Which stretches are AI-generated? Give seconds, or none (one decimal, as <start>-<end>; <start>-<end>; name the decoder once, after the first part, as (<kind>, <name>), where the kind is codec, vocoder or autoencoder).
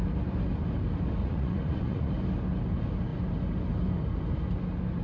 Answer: 1.2-2.1 (vocoder, Vocos)